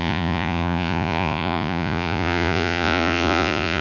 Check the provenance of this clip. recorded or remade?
remade